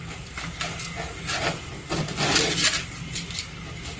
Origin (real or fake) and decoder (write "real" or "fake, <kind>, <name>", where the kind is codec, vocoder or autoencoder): real